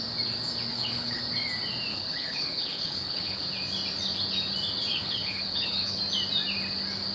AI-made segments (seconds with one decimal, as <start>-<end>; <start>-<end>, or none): 0.7-1.2; 1.9-3.4; 4.9-6.0